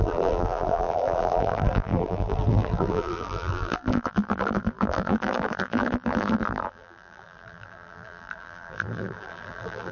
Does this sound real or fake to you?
fake